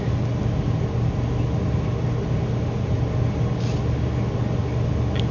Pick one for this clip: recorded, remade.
recorded